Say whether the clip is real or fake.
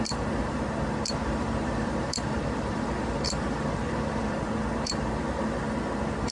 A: fake